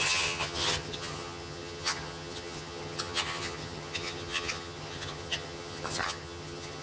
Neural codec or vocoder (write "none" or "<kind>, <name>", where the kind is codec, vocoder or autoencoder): vocoder, HiFi-GAN